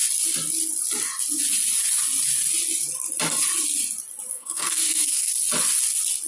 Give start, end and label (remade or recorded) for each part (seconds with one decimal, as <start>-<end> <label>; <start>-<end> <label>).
0.0-4.3 recorded; 4.3-5.3 remade; 5.3-6.3 recorded